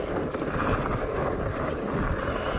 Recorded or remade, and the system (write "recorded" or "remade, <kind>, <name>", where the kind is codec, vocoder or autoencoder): recorded